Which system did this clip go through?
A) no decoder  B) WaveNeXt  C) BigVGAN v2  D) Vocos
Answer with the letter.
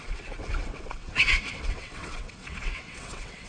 B